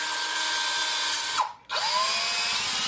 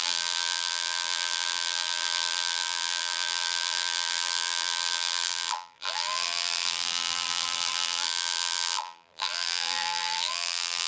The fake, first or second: second